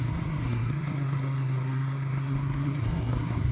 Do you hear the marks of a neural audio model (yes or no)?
yes